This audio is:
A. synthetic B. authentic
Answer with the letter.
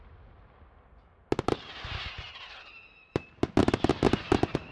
B